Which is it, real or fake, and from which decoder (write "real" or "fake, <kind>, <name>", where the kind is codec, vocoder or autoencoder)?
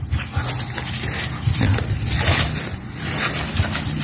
real